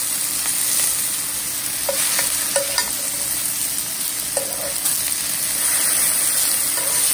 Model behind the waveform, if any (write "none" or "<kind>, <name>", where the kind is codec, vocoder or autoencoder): none